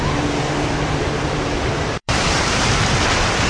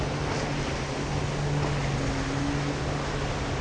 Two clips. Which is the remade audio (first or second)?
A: first